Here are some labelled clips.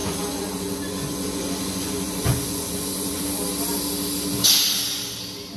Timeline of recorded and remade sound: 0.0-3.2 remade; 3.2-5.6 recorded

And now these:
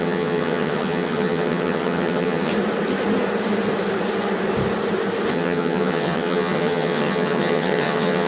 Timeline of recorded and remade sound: 0.0-2.5 remade; 2.5-5.3 recorded; 5.3-8.3 remade

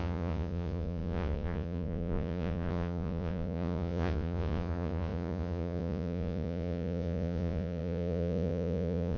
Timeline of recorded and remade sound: 0.0-9.2 remade

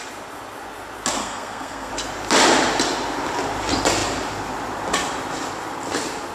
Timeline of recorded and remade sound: 0.0-1.2 recorded; 1.2-1.9 remade; 1.9-6.3 recorded

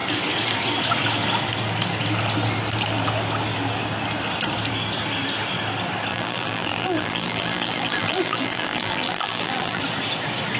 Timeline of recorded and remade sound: 0.0-6.1 recorded; 6.1-9.8 remade; 9.8-10.6 recorded

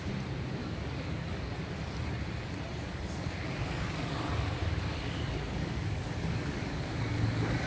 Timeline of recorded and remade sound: 0.0-0.6 recorded; 0.6-1.5 remade; 1.5-2.8 recorded; 2.8-7.7 remade

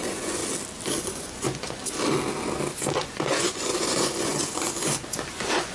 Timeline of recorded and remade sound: 0.0-0.4 remade; 0.4-1.0 recorded; 1.0-1.8 remade; 1.8-3.0 recorded; 3.0-5.7 remade

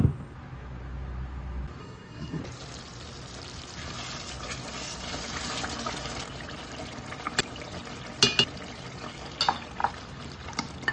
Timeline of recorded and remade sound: 0.0-1.8 recorded; 1.8-2.4 remade; 2.4-10.9 recorded